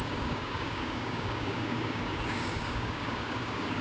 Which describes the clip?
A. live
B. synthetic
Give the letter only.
B